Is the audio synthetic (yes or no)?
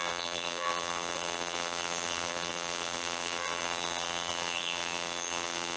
yes